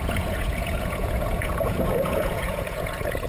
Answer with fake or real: fake